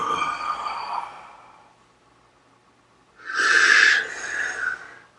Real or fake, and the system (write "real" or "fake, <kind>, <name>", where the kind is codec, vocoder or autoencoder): real